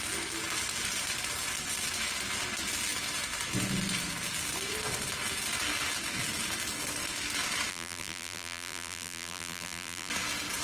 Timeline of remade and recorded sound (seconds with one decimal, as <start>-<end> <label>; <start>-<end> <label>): 0.0-7.7 recorded; 7.7-10.1 remade; 10.1-10.6 recorded